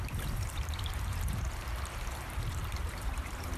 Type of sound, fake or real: fake